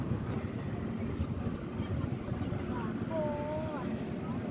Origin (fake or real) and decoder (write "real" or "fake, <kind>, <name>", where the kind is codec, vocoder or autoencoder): real